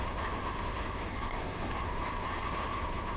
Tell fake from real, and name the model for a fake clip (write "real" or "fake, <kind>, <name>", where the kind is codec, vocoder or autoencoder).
fake, codec, SNAC